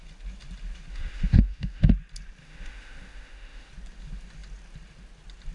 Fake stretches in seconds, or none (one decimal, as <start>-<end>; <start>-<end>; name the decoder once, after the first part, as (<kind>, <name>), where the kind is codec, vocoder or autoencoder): 0.9-1.9 (autoencoder, DAC-VAE); 2.4-3.7